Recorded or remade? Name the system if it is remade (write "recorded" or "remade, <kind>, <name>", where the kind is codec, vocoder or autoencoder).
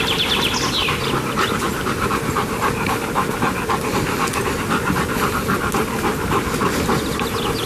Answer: recorded